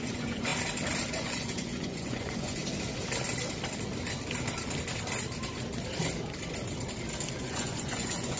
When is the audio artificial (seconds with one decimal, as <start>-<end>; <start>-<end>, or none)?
0.0-0.5; 1.1-2.6; 7.4-8.4